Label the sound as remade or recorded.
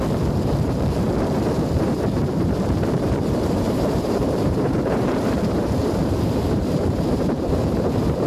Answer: remade